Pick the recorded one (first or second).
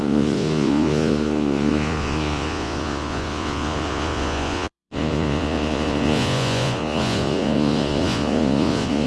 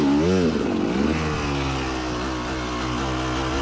second